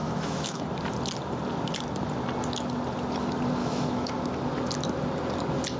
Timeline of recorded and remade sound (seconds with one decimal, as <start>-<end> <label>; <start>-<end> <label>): 0.0-0.6 remade; 0.6-3.6 recorded; 3.6-4.1 remade; 4.1-5.8 recorded